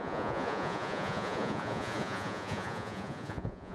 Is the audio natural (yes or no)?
no